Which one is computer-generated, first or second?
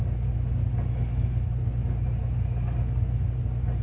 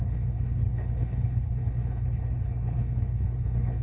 second